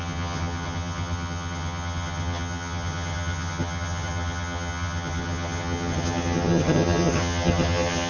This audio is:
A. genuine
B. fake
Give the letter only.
B